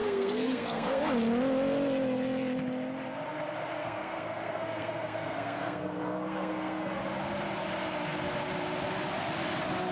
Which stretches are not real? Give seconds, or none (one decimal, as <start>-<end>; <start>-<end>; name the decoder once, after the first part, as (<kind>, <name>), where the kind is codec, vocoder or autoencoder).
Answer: 0.0-1.0 (codec, SNAC); 3.8-7.0